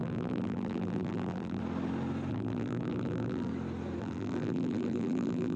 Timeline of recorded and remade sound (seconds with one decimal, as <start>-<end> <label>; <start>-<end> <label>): 0.0-1.6 remade; 1.6-2.3 recorded; 2.3-3.5 remade; 3.5-4.0 recorded; 4.0-5.6 remade